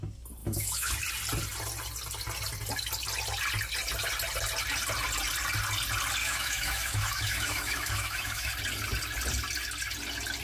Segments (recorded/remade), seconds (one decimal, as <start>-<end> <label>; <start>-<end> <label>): 0.0-0.4 recorded; 0.4-0.9 remade; 0.9-6.2 recorded; 6.2-8.5 remade; 8.5-10.4 recorded